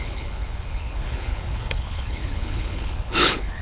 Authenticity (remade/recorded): remade